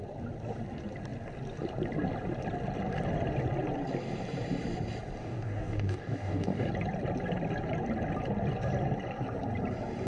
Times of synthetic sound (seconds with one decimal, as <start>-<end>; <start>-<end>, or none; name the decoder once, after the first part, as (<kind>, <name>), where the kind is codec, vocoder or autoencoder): 5.2-6.7 (codec, DAC)

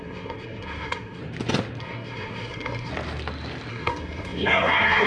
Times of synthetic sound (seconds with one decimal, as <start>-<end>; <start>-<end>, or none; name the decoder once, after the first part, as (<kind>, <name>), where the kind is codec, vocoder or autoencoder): 0.0-1.2 (codec, SNAC); 1.8-2.9; 3.7-5.1